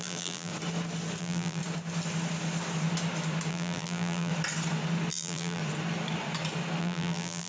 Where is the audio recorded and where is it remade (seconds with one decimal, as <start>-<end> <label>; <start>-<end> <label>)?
0.0-0.5 remade; 0.5-1.2 recorded; 1.2-1.6 remade; 1.6-3.5 recorded; 3.5-4.3 remade; 4.3-5.1 recorded; 5.1-5.6 remade; 5.6-6.8 recorded; 6.8-7.5 remade

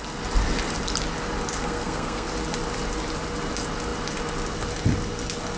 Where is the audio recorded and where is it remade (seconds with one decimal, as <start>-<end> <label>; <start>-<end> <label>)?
0.0-1.6 recorded; 1.6-2.3 remade; 2.3-5.6 recorded

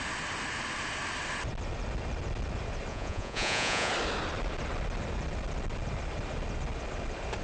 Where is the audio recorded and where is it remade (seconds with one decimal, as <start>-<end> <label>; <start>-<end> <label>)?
0.0-2.9 recorded; 2.9-3.9 remade; 3.9-7.4 recorded

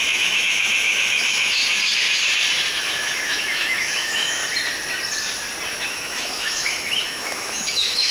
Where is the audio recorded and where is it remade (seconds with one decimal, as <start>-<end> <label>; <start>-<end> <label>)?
0.0-1.6 remade; 1.6-2.8 recorded; 2.8-4.4 remade; 4.4-5.8 recorded; 5.8-8.1 remade